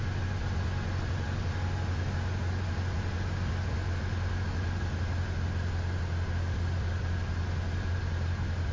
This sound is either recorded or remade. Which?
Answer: recorded